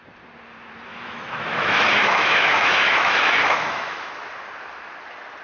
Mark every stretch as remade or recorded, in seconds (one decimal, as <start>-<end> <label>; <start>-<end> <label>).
0.0-0.9 recorded; 0.9-4.1 remade; 4.1-5.4 recorded